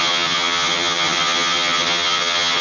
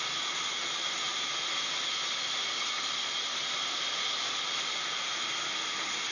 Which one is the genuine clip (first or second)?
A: second